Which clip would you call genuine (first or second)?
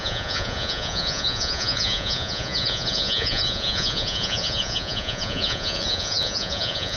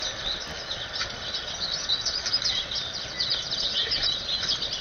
second